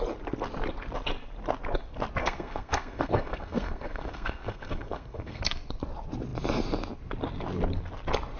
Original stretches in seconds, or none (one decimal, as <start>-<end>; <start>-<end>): 0.0-2.2; 5.4-8.4